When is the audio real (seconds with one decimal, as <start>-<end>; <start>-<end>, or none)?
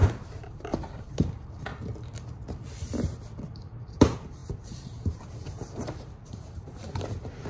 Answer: 1.7-4.0